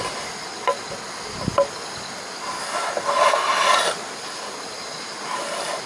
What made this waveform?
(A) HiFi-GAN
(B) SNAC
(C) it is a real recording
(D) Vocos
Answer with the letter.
C